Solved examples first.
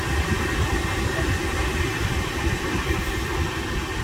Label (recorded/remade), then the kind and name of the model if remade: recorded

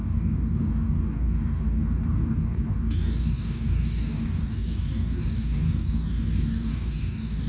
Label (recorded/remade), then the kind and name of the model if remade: remade, codec, DAC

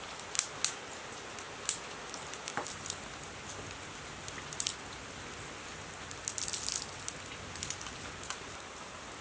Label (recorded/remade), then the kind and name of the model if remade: recorded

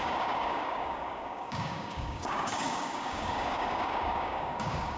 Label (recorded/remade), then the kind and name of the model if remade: remade, codec, DAC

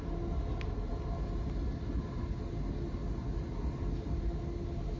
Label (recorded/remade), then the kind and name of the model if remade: recorded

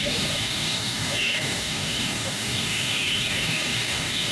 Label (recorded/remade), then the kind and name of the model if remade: remade, codec, DAC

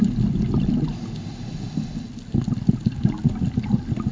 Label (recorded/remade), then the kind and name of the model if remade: recorded